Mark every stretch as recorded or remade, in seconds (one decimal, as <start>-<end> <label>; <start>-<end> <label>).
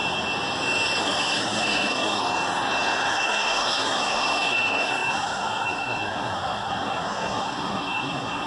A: 0.0-1.0 recorded; 1.0-2.2 remade; 2.2-3.1 recorded; 3.1-8.5 remade